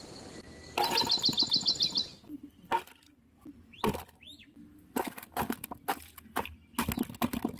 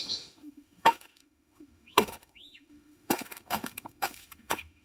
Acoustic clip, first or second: first